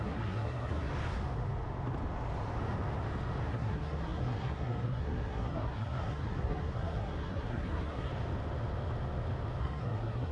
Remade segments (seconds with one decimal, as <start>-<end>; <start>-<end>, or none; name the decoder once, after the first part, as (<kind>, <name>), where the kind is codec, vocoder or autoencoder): 0.0-0.9 (codec, SNAC); 3.5-8.1; 9.6-10.3